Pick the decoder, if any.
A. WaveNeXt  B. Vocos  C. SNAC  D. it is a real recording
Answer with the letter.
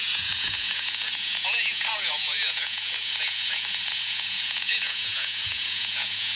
B